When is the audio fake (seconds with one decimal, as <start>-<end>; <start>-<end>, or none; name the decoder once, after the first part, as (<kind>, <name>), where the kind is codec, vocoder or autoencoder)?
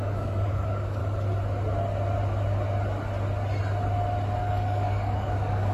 0.0-1.0 (codec, DAC); 4.4-5.7